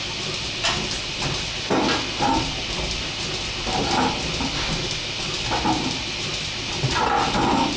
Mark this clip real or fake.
real